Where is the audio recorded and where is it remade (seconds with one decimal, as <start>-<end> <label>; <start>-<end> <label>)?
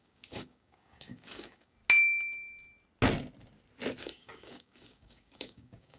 0.0-1.8 remade; 1.8-4.0 recorded; 4.0-6.0 remade